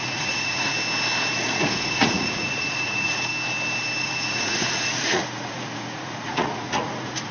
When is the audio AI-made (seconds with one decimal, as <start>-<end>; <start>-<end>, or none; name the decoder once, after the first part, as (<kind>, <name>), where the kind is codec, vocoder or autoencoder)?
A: 0.0-0.7 (vocoder, Vocos); 1.3-3.3; 4.0-7.3